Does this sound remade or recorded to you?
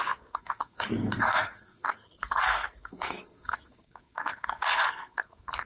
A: remade